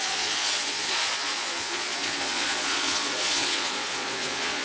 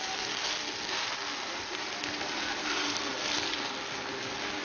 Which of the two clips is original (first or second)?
second